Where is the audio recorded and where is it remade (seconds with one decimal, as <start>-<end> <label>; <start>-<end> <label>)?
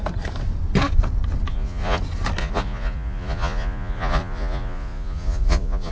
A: 0.0-1.5 recorded; 1.5-2.0 remade; 2.0-2.4 recorded; 2.4-5.9 remade